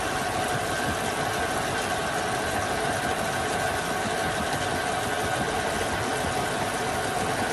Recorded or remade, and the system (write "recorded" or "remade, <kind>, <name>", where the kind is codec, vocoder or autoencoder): recorded